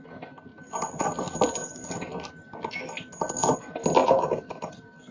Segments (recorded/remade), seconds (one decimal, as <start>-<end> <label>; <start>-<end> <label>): 0.0-4.0 recorded; 4.0-5.1 remade

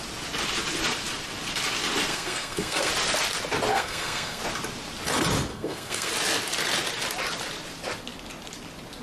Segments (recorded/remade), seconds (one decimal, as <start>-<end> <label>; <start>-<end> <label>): 0.0-2.1 recorded; 2.1-2.9 remade; 2.9-3.7 recorded; 3.7-4.4 remade; 4.4-5.5 recorded; 5.5-6.1 remade; 6.1-9.0 recorded

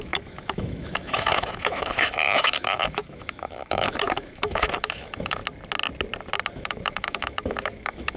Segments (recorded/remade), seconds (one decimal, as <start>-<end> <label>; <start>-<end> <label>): 0.0-5.4 remade; 5.4-6.6 recorded; 6.6-8.2 remade

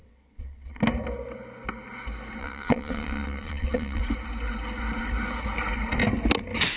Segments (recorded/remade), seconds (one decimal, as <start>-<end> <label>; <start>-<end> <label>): 0.0-0.8 remade; 0.8-2.4 recorded; 2.4-4.0 remade; 4.0-6.8 recorded

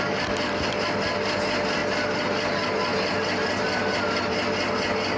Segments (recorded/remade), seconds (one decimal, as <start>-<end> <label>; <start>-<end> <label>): 0.0-5.2 recorded

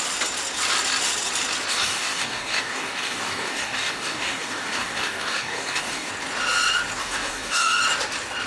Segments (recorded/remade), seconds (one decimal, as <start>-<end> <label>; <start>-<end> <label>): 0.0-1.7 recorded; 1.7-6.1 remade; 6.1-7.0 recorded; 7.0-7.8 remade; 7.8-8.5 recorded

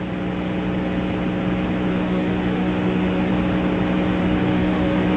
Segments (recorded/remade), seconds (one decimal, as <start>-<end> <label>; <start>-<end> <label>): 0.0-1.9 recorded; 1.9-3.3 remade; 3.3-4.2 recorded; 4.2-5.2 remade